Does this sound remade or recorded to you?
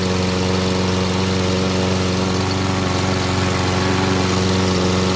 recorded